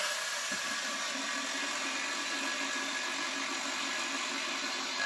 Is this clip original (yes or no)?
yes